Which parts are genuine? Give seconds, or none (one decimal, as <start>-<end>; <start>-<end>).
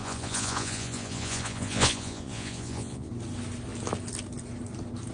3.1-5.1